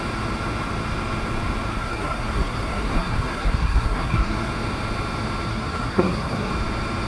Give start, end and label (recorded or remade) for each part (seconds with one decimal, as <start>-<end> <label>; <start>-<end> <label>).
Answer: 0.0-1.7 recorded; 1.7-4.5 remade; 4.5-5.5 recorded; 5.5-6.5 remade; 6.5-7.1 recorded